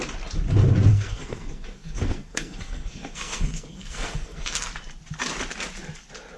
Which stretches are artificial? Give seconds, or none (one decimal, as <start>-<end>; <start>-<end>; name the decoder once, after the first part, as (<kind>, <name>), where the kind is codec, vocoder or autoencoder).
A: 0.9-4.7 (codec, SNAC)